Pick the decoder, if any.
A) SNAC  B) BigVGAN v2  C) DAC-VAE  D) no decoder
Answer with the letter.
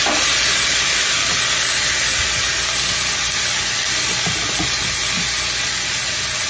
D